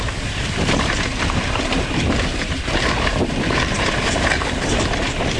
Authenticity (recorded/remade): remade